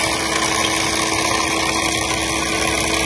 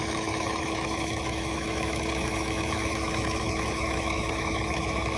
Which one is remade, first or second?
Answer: second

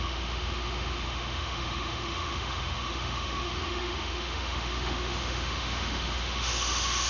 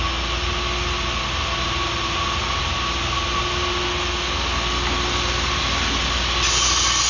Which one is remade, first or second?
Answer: first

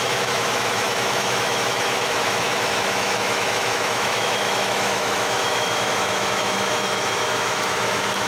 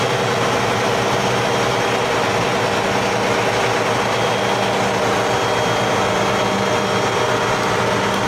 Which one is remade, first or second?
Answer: first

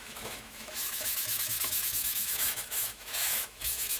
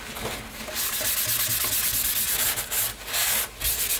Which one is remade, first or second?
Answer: first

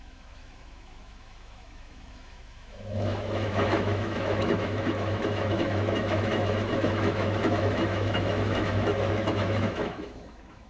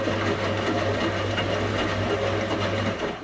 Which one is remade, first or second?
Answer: first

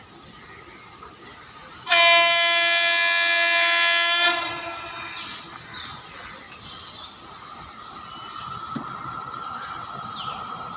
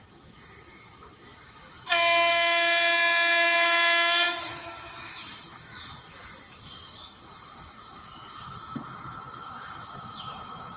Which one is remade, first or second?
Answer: second